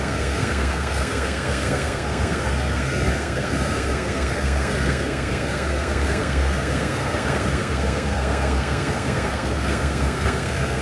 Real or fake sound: fake